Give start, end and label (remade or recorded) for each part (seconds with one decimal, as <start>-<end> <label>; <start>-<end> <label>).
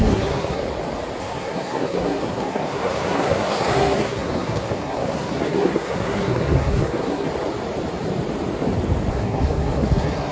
0.0-0.6 remade; 0.6-1.2 recorded; 1.2-7.3 remade; 7.3-9.1 recorded; 9.1-10.3 remade